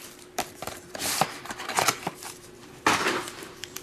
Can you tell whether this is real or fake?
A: fake